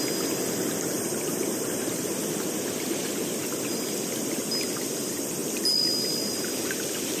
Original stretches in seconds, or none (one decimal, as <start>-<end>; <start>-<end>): 0.0-7.2